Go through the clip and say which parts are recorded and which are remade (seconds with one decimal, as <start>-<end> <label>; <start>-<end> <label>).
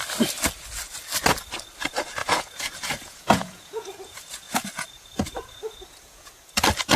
0.0-2.2 recorded; 2.2-6.4 remade; 6.4-7.0 recorded